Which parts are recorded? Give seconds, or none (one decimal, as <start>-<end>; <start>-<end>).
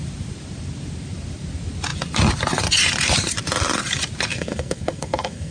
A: 0.0-4.3